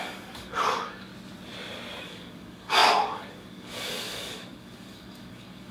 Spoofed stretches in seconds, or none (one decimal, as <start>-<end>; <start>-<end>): 0.0-1.1; 2.0-5.7